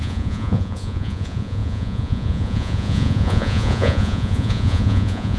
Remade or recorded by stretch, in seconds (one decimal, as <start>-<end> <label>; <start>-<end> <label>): 0.0-5.4 remade